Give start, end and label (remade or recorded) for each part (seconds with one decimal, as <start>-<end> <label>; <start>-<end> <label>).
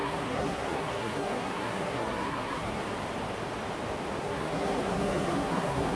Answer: 0.0-2.8 remade; 2.8-4.2 recorded; 4.2-6.0 remade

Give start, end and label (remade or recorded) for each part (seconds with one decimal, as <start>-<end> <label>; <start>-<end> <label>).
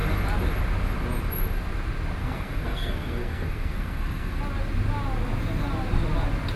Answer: 0.0-2.2 recorded; 2.2-4.4 remade; 4.4-6.6 recorded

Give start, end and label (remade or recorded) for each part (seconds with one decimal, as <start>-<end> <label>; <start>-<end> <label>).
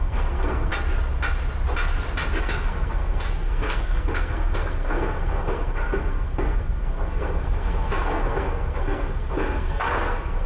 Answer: 0.0-0.7 remade; 0.7-2.4 recorded; 2.4-10.5 remade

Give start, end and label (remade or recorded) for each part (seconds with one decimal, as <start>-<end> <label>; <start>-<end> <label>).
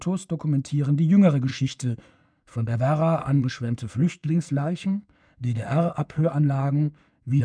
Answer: 0.0-1.5 recorded; 1.5-2.8 remade; 2.8-3.2 recorded; 3.2-7.4 remade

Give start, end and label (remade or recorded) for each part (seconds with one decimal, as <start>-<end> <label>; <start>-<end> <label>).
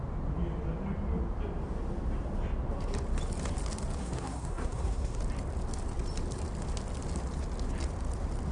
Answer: 0.0-4.0 recorded; 4.0-5.2 remade; 5.2-8.5 recorded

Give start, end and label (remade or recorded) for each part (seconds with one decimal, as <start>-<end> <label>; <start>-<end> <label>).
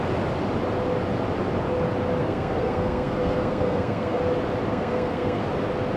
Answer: 0.0-2.2 recorded; 2.2-4.2 remade; 4.2-4.7 recorded; 4.7-5.4 remade; 5.4-6.0 recorded